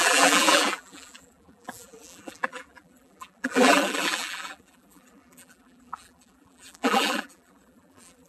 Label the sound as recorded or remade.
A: remade